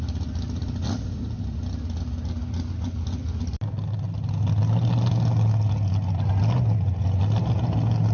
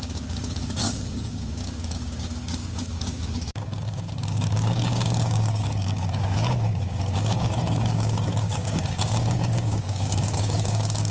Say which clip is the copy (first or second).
second